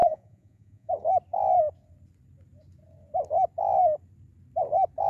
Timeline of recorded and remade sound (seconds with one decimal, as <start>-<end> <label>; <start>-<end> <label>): 0.0-0.9 remade; 0.9-5.1 recorded